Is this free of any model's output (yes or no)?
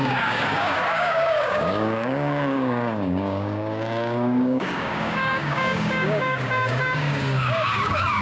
no